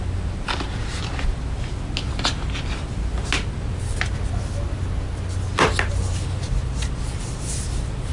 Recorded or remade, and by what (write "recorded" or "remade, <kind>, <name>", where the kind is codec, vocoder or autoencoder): recorded